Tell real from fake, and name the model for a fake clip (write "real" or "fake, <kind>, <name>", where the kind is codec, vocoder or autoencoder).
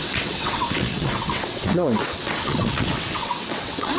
fake, vocoder, WaveNeXt